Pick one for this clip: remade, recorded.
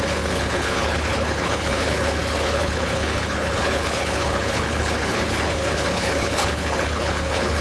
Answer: remade